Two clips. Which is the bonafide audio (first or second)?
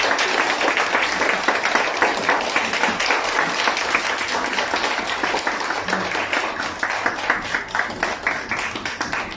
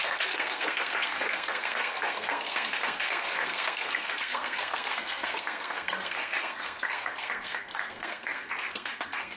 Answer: first